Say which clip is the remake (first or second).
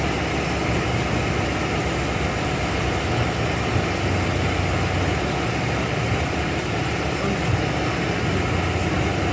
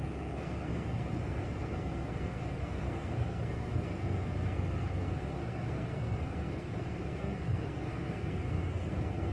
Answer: second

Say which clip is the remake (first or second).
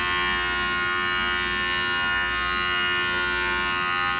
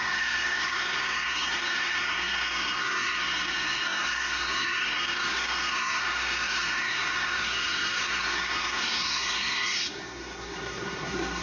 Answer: second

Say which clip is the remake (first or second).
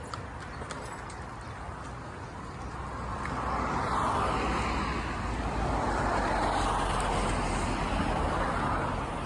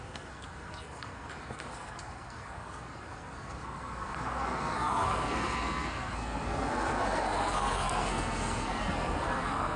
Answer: second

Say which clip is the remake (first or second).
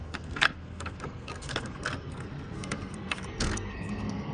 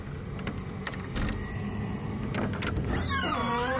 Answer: first